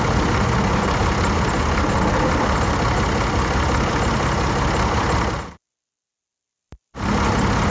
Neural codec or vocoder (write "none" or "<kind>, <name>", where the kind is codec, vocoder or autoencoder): none